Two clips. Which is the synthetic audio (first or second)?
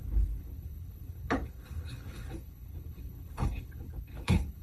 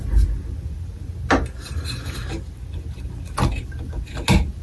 first